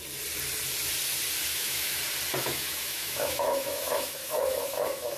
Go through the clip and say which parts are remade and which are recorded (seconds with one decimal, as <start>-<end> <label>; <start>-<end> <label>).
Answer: 0.0-1.5 recorded; 1.5-2.0 remade; 2.0-2.4 recorded; 2.4-5.2 remade

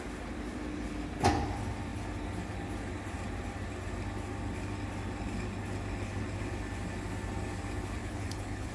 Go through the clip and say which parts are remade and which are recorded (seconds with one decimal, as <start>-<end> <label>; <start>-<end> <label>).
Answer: 0.0-8.0 recorded; 8.0-8.7 remade

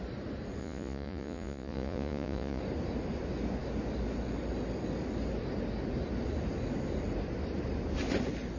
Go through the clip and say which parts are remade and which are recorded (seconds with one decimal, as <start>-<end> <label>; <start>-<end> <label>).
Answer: 0.0-0.6 recorded; 0.6-2.6 remade; 2.6-8.6 recorded

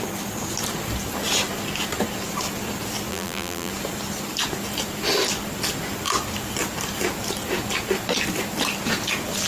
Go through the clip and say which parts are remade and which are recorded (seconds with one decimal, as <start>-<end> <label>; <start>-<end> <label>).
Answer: 0.0-3.1 recorded; 3.1-3.7 remade; 3.7-9.5 recorded

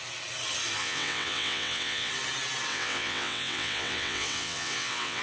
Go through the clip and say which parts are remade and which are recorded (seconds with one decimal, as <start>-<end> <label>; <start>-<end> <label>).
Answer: 0.0-0.8 recorded; 0.8-2.1 remade; 2.1-2.7 recorded; 2.7-5.2 remade

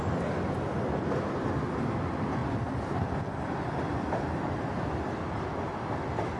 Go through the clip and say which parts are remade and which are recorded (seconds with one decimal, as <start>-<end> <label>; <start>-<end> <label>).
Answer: 0.0-6.4 recorded